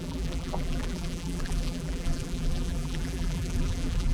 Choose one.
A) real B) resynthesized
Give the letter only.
B